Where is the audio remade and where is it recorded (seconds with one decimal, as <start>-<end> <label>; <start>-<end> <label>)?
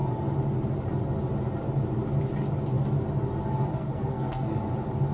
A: 0.0-3.7 recorded; 3.7-4.6 remade; 4.6-5.1 recorded